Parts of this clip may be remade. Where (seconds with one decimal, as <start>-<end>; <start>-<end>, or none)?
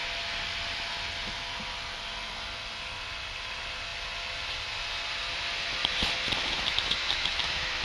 6.4-7.8